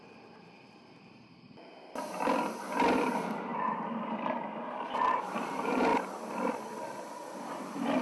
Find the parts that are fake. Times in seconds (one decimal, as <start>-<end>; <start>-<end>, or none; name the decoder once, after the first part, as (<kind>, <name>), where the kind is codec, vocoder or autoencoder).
0.0-1.8 (vocoder, BigVGAN v2); 3.0-5.9